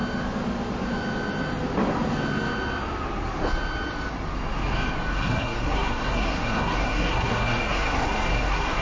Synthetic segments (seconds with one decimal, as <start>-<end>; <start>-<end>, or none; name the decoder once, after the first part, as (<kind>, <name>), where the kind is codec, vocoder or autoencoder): 5.1-8.8 (codec, SNAC)

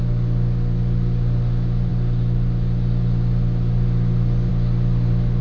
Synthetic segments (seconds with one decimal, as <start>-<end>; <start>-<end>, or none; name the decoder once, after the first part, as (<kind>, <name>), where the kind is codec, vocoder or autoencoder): none

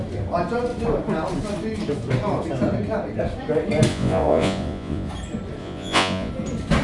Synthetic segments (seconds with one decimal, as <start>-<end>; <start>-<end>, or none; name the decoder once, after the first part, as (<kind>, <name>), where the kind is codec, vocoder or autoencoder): 3.9-5.1 (vocoder, Vocos); 5.6-6.3

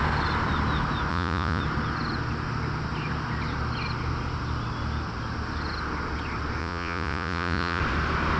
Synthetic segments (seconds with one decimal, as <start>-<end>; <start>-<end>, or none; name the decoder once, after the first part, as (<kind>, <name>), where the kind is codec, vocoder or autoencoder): 1.1-1.6 (vocoder, Vocos); 6.6-7.8

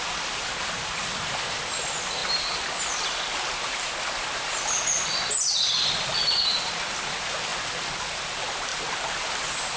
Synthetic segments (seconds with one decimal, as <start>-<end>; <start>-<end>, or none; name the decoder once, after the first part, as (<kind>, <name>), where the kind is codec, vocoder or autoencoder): none

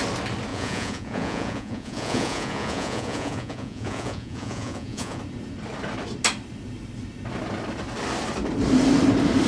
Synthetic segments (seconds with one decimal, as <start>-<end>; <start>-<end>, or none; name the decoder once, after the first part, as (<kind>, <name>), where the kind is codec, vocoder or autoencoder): 0.5-5.2 (vocoder, Vocos)

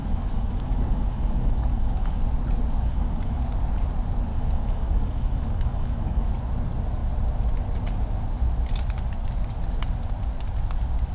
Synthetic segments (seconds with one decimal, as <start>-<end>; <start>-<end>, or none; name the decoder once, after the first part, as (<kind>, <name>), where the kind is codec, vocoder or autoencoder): 0.0-2.2 (codec, DAC); 2.8-3.4; 4.3-6.3